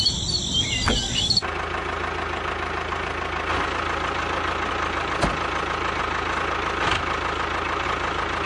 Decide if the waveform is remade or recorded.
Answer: recorded